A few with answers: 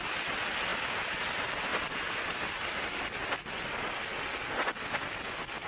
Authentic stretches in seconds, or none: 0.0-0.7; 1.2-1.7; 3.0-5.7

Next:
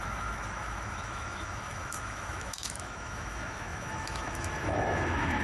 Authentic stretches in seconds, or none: none

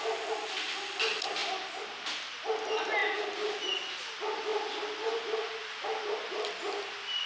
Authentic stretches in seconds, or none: 0.0-7.3

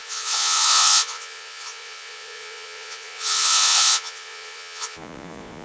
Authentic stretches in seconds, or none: none

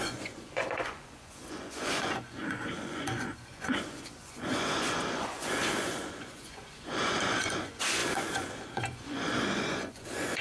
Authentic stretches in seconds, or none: none

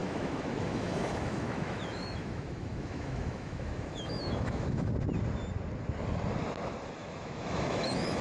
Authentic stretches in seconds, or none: 4.9-7.0